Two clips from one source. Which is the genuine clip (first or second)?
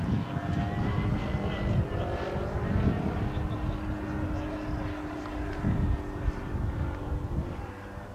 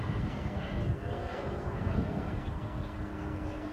first